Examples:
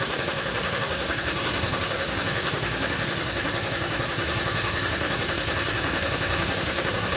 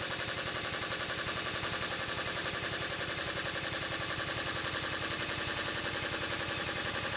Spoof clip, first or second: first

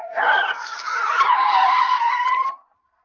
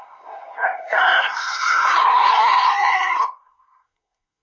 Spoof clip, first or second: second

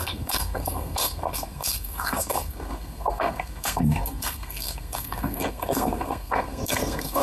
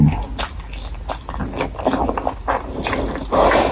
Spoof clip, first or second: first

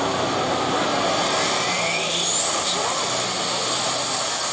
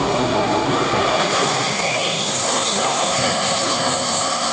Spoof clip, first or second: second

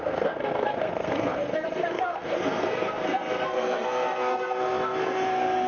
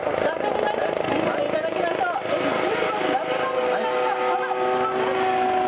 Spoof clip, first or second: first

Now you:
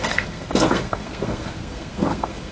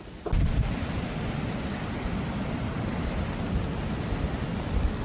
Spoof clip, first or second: first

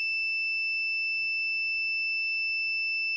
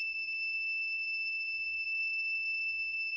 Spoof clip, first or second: second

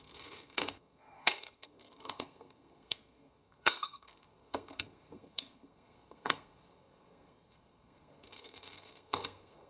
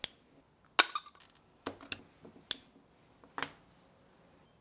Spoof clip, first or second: first